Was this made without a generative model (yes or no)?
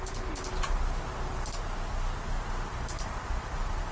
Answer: yes